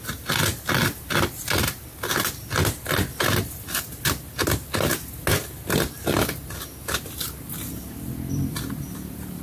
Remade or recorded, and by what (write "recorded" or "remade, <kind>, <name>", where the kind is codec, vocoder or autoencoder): recorded